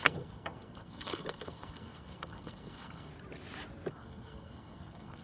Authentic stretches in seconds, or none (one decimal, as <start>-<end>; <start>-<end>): 3.1-3.9